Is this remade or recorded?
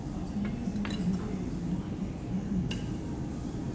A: recorded